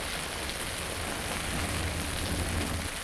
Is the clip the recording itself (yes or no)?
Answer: yes